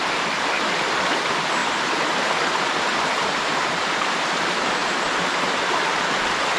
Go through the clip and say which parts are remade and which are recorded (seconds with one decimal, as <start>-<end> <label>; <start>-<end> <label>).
0.0-1.6 recorded; 1.6-3.9 remade; 3.9-4.8 recorded; 4.8-5.9 remade; 5.9-6.6 recorded